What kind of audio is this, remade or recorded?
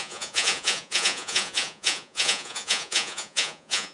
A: remade